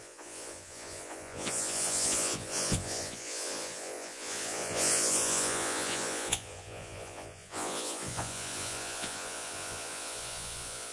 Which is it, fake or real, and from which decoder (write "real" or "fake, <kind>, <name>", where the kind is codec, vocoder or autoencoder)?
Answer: fake, vocoder, Vocos